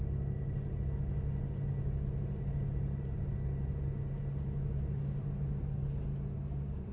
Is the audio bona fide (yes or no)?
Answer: yes